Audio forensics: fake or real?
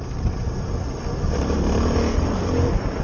real